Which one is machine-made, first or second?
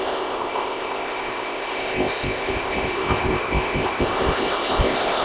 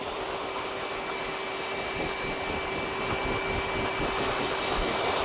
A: first